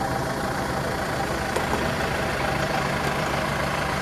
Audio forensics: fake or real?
fake